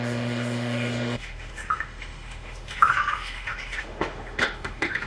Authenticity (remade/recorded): remade